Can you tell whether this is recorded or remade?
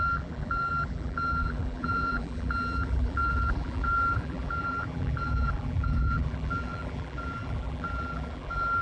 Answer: remade